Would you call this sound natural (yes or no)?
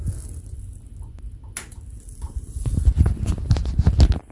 yes